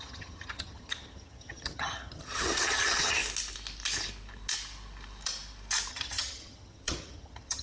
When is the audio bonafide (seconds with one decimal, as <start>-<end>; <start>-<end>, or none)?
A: 3.2-5.9